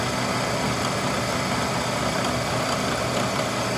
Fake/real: real